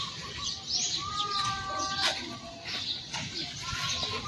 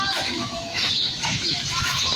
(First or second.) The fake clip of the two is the second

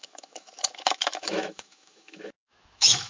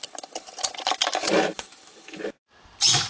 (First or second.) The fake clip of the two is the first